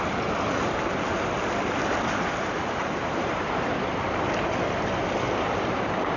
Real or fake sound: real